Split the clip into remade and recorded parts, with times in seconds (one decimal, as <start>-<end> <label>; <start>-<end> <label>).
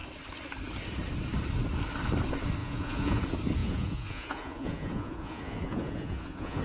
0.0-2.6 recorded; 2.6-3.2 remade; 3.2-3.6 recorded; 3.6-6.6 remade